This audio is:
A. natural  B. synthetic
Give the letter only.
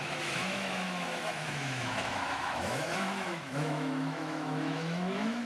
B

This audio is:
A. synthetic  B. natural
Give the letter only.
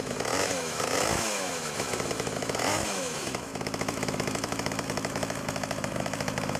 A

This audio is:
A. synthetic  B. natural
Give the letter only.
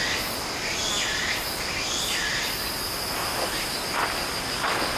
B